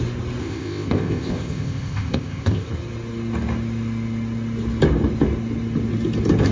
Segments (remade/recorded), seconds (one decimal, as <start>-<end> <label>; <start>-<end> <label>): 0.0-0.4 recorded; 0.4-2.7 remade; 2.7-6.5 recorded